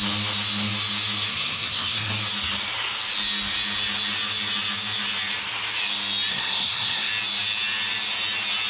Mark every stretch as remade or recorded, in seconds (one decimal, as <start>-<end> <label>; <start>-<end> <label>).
0.0-1.3 recorded; 1.3-2.1 remade; 2.1-6.3 recorded; 6.3-7.1 remade; 7.1-8.7 recorded